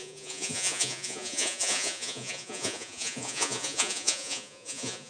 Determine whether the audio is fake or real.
fake